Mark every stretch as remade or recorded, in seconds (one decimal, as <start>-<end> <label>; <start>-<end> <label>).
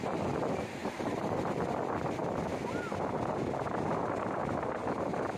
0.0-0.8 recorded; 0.8-1.6 remade; 1.6-5.4 recorded